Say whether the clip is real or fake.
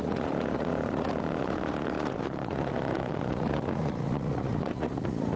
fake